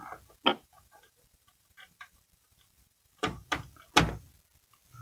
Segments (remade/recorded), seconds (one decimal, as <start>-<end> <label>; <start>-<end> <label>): 0.0-0.5 recorded; 0.5-3.5 remade; 3.5-5.0 recorded